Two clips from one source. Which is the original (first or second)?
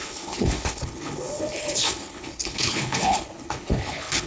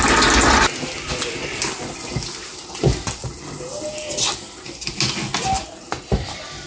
second